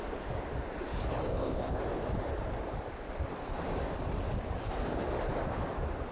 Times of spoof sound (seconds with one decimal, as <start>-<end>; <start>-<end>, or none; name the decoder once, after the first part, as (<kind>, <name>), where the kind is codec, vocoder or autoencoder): 1.3-1.8 (codec, ZipCodec)